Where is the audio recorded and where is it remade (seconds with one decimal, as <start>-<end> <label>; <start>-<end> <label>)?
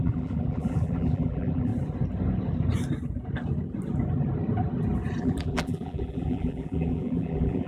0.0-1.7 remade; 1.7-5.2 recorded; 5.2-7.7 remade